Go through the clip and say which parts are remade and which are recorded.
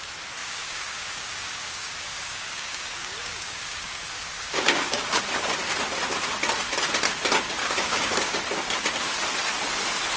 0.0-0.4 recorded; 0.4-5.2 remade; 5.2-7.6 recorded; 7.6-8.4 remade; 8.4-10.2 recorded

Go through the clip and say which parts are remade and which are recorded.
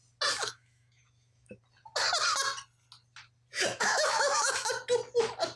0.0-0.4 recorded; 0.4-1.6 remade; 1.6-3.5 recorded; 3.5-4.7 remade; 4.7-5.6 recorded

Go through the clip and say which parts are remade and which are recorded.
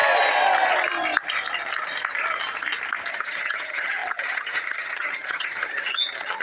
0.0-3.1 recorded; 3.1-6.4 remade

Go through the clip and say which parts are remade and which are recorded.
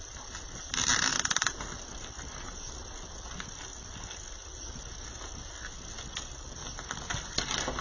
0.0-7.8 recorded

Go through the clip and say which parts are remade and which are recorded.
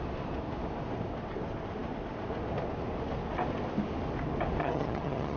0.0-4.6 recorded; 4.6-5.4 remade